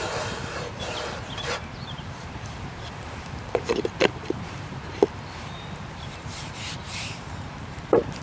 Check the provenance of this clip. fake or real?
fake